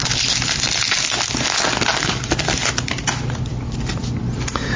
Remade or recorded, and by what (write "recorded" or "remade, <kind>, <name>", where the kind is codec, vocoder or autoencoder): recorded